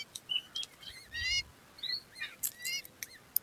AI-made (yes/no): no